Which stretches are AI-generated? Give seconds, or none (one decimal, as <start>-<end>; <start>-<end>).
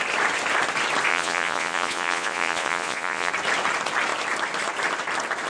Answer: 1.1-3.3